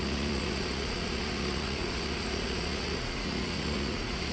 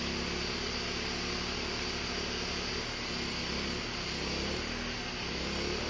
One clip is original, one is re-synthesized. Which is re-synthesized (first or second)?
first